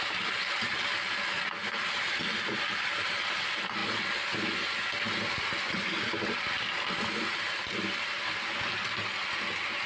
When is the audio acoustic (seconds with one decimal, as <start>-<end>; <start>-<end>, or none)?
0.0-9.9